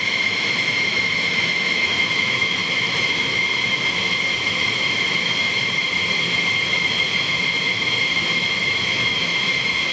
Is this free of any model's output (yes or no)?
no